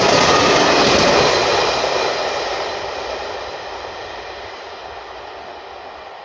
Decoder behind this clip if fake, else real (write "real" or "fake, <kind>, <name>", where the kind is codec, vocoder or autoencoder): real